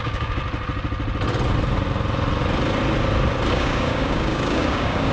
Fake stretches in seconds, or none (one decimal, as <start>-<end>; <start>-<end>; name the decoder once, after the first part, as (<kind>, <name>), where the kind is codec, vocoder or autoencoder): 0.0-0.4 (codec, DAC); 3.5-5.1